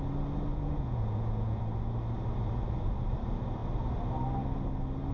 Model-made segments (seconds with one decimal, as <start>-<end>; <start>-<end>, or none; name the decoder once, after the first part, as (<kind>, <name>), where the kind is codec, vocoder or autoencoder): 0.5-1.6 (vocoder, Vocos)